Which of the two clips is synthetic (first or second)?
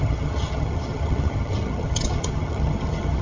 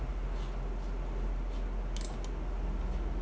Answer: first